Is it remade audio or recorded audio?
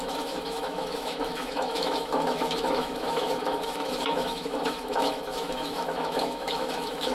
remade